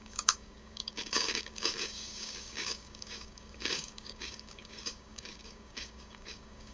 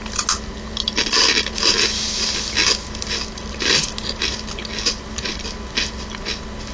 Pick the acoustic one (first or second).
second